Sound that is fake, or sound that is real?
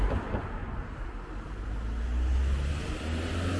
real